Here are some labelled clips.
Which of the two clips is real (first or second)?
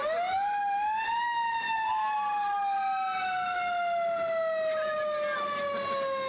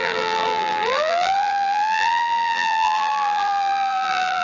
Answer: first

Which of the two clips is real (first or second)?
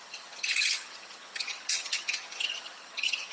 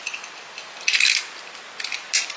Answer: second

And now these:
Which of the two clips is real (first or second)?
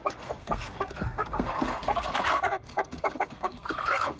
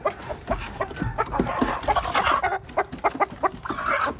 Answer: second